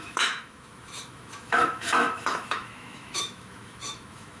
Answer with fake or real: fake